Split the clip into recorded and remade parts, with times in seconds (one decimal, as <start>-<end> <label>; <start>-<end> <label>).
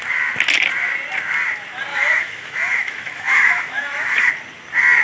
0.0-1.9 recorded; 1.9-4.3 remade; 4.3-5.0 recorded